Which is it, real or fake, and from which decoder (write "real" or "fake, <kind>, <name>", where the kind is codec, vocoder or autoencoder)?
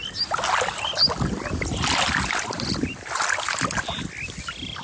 real